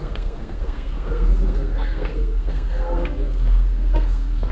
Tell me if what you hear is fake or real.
fake